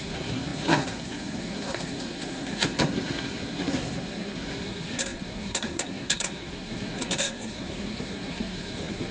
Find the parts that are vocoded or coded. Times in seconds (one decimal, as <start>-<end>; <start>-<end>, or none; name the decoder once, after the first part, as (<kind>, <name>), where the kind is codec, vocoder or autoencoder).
0.0-9.1 (codec, SNAC)